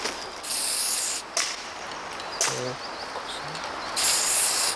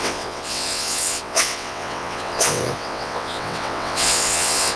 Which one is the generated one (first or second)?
second